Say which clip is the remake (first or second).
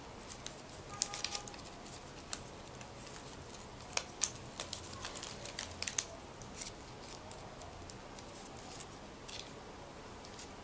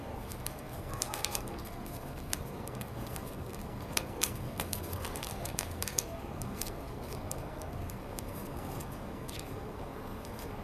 second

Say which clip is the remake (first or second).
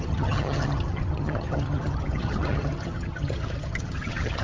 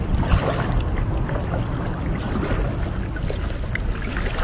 first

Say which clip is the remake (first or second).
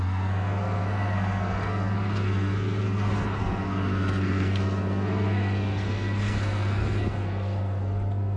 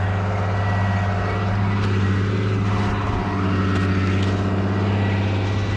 first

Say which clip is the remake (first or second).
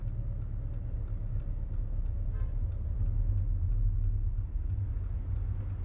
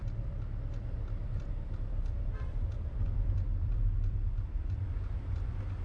second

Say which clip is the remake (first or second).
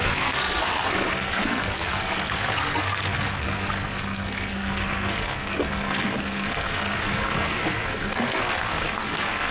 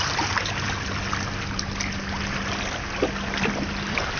first